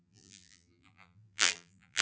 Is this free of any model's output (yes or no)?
no